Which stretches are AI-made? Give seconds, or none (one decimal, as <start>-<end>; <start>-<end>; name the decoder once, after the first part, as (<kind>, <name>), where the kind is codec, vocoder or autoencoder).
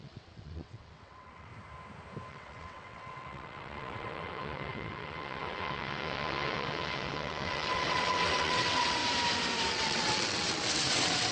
0.0-1.5 (vocoder, WaveNeXt); 2.3-9.0; 9.7-11.3